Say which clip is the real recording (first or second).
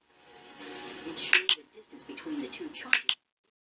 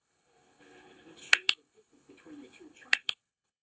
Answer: first